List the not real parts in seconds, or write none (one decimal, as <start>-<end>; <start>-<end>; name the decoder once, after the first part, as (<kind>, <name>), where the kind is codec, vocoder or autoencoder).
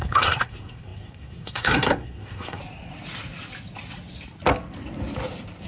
0.0-2.6 (codec, SNAC)